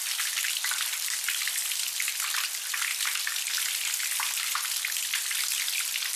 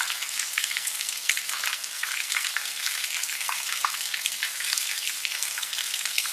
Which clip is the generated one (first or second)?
second